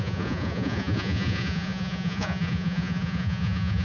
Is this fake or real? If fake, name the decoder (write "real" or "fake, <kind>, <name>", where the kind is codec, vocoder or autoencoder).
fake, vocoder, Vocos